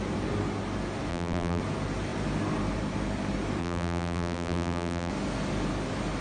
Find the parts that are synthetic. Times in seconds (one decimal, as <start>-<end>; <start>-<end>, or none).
1.1-1.6; 3.6-5.1